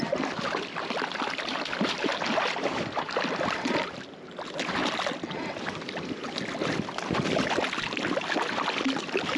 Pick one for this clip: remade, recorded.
recorded